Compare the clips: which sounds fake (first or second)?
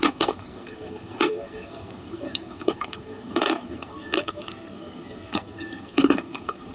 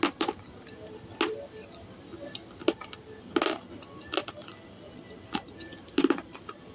first